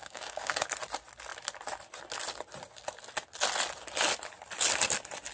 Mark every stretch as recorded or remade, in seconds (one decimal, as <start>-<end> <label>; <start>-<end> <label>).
0.0-0.7 remade; 0.7-5.3 recorded